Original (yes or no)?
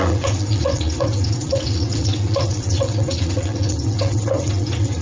no